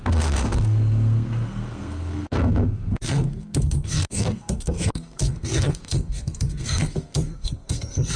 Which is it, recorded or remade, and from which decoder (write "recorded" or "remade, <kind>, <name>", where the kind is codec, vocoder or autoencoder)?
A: remade, codec, SNAC